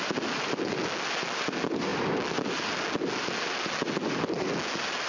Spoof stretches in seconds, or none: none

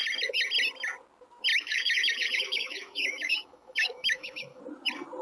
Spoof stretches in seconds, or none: 1.5-4.6 (autoencoder, DAC-VAE)

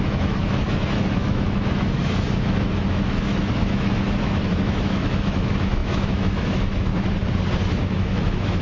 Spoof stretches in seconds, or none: 0.0-6.9 (autoencoder, DAC-VAE); 7.8-8.6